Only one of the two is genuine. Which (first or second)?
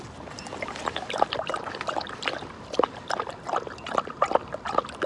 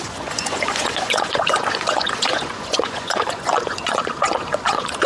first